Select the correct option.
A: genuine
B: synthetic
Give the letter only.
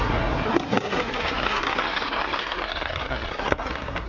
B